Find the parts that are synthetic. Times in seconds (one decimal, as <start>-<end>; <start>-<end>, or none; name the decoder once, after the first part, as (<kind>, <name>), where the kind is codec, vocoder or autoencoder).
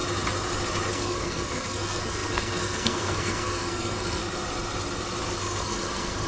0.9-4.2 (codec, SNAC); 5.4-6.3